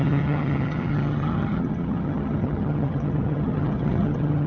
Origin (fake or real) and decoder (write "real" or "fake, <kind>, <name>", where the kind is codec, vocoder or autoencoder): fake, vocoder, HiFi-GAN